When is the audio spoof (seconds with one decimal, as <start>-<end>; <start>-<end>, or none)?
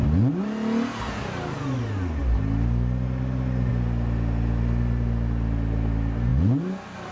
none